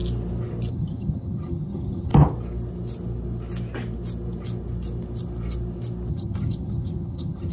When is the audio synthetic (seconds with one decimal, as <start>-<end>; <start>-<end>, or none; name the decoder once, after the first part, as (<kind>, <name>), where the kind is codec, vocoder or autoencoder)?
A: 0.7-2.1 (vocoder, HiFi-GAN); 6.1-7.5